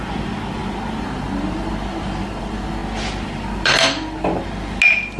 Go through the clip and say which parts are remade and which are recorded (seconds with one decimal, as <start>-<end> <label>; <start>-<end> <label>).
0.0-5.2 recorded